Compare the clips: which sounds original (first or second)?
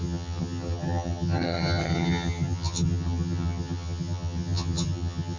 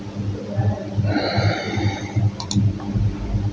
second